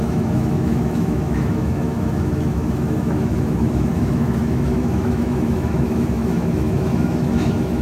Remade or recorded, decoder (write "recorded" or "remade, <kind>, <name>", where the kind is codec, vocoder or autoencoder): remade, autoencoder, DAC-VAE